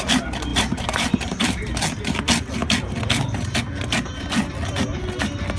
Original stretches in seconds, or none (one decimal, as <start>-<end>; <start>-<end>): 0.0-0.5; 1.7-5.6